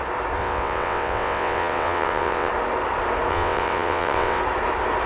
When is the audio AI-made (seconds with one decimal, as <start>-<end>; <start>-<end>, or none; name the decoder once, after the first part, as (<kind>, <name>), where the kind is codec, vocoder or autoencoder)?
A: 0.4-2.5 (vocoder, WaveNeXt); 3.3-4.4